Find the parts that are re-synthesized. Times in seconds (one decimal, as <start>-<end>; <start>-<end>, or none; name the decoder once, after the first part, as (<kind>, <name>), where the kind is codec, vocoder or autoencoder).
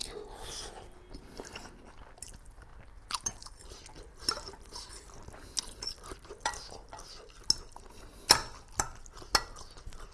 none